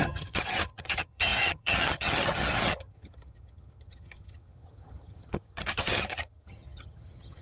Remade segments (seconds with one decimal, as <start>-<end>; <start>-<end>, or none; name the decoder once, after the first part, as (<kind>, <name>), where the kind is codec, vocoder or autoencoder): 0.0-7.4 (vocoder, HiFi-GAN)